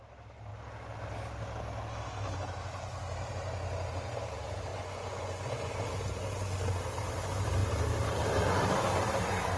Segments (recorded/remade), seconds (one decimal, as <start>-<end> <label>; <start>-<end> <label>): 0.0-4.7 recorded; 4.7-5.7 remade; 5.7-9.6 recorded